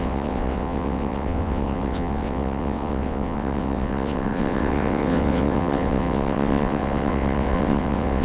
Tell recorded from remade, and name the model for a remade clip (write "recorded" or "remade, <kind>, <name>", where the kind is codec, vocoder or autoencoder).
remade, vocoder, WaveNeXt